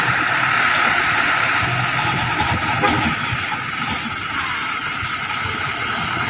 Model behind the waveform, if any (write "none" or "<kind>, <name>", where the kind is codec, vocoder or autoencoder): vocoder, BigVGAN v2